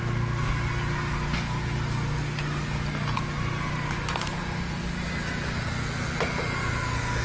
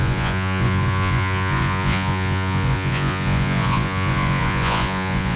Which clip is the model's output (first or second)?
second